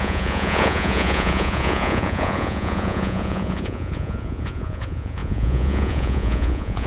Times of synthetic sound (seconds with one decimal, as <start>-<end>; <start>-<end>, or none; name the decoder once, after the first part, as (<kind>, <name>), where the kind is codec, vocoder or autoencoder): 0.0-6.9 (vocoder, Vocos)